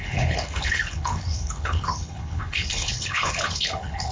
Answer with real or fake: fake